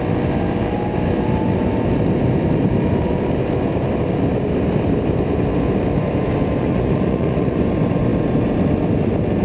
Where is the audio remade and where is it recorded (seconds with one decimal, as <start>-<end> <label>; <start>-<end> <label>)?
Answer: 0.0-6.6 recorded; 6.6-7.6 remade; 7.6-9.4 recorded